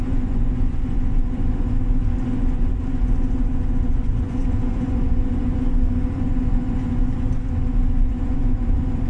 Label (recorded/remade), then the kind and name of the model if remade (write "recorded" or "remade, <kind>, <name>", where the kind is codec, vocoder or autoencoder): remade, vocoder, Vocos